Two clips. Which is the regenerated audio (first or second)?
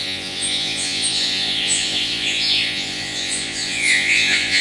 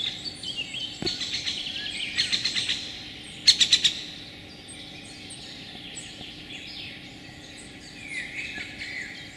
first